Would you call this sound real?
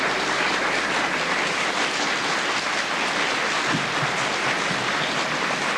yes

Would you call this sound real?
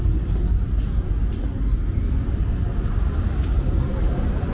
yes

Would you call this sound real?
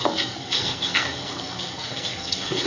no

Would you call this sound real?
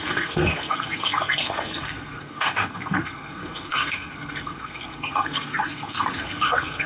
no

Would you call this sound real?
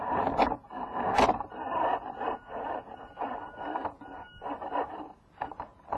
yes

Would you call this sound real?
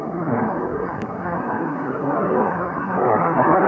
no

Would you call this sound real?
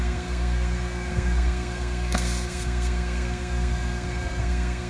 no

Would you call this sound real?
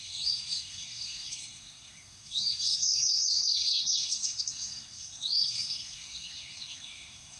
no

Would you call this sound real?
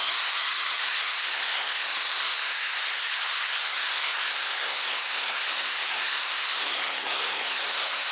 no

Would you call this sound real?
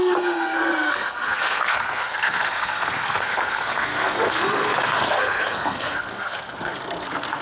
no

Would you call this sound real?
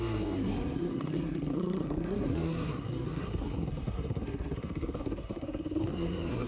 no